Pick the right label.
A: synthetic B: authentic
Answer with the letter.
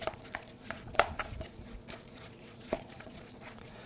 A